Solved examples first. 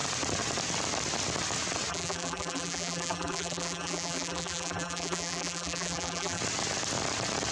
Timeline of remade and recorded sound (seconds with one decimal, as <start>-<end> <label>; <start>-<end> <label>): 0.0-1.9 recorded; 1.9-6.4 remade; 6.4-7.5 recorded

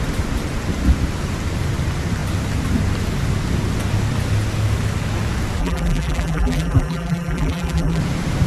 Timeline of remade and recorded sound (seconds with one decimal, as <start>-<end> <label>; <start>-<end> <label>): 0.0-5.6 recorded; 5.6-8.0 remade; 8.0-8.5 recorded

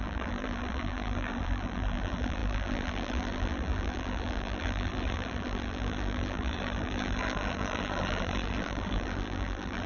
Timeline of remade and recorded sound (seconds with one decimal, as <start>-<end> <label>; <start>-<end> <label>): 0.0-9.9 remade

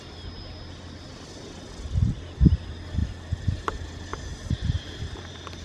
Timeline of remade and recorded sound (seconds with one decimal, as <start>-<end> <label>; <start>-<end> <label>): 0.0-5.6 recorded

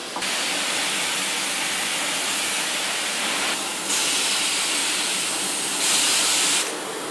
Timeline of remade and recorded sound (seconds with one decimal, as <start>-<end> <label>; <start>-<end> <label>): 0.0-4.8 recorded; 4.8-5.3 remade; 5.3-7.1 recorded

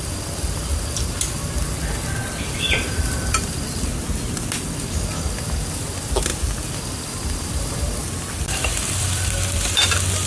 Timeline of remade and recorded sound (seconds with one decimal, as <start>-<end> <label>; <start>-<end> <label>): 0.0-2.2 recorded; 2.2-3.9 remade; 3.9-6.3 recorded; 6.3-10.3 remade

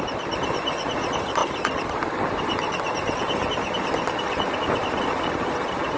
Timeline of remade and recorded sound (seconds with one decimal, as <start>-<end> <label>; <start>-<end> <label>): 0.0-6.0 recorded